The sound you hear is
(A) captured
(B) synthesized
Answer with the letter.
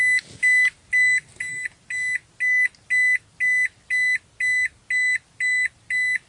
A